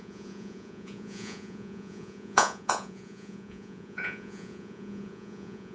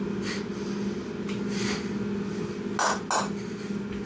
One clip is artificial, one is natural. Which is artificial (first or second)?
first